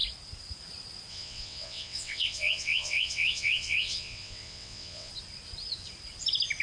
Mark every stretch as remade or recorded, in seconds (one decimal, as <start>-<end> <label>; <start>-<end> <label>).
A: 0.0-1.1 recorded; 1.1-5.1 remade; 5.1-6.6 recorded